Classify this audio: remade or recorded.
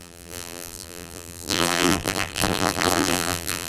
remade